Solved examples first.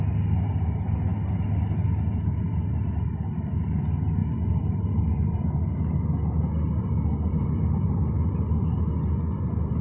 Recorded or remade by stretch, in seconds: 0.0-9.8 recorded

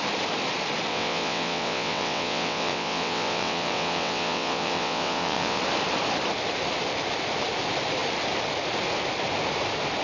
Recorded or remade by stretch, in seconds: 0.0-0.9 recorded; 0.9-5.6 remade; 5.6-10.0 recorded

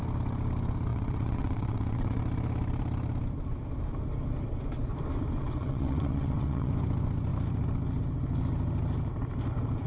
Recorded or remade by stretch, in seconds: 0.0-0.9 recorded; 0.9-2.2 remade; 2.2-5.4 recorded; 5.4-6.7 remade; 6.7-9.9 recorded

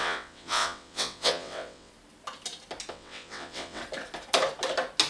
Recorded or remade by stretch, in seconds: 0.0-1.9 remade; 1.9-2.9 recorded; 2.9-3.8 remade; 3.8-5.1 recorded

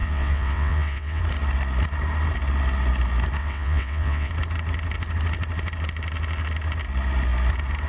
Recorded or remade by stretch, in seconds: 0.0-1.2 remade; 1.2-3.4 recorded; 3.4-4.3 remade; 4.3-7.9 recorded